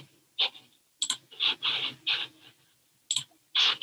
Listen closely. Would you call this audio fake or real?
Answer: real